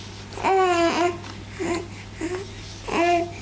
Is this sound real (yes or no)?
yes